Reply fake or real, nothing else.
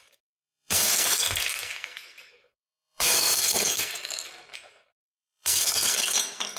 fake